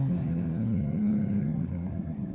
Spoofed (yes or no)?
yes